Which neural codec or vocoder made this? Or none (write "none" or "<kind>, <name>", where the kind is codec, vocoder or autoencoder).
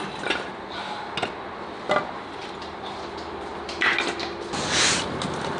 none